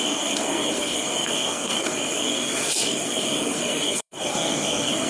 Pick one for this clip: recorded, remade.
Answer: remade